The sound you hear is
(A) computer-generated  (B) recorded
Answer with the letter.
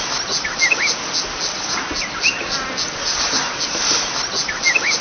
B